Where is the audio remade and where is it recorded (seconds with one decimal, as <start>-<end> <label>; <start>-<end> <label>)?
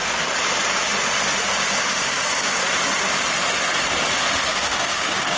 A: 0.0-1.9 recorded; 1.9-2.6 remade; 2.6-4.5 recorded; 4.5-5.4 remade